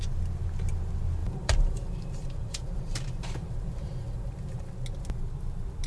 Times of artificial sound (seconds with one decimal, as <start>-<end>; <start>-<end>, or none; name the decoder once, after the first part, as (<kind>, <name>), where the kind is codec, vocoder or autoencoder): 1.2-4.7 (vocoder, BigVGAN v2)